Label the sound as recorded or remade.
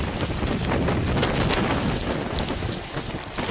recorded